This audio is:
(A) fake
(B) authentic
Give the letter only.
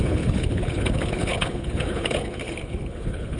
A